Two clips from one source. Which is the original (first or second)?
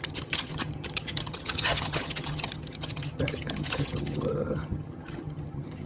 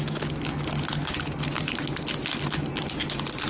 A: second